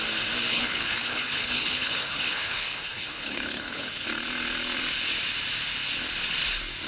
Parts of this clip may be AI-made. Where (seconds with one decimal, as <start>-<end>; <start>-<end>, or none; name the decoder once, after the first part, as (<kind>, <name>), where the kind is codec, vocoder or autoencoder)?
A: 0.5-4.1 (codec, HILCodec)